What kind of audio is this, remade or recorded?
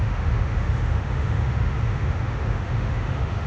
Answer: remade